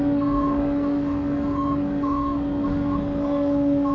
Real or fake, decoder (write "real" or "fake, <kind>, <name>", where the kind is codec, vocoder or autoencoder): fake, codec, SNAC